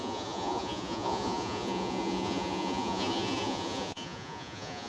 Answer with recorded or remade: remade